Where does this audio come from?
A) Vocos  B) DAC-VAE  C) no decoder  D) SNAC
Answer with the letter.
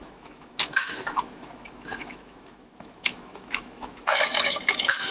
B